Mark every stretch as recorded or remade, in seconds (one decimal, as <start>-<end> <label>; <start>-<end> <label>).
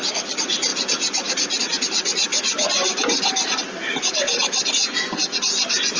0.0-6.0 recorded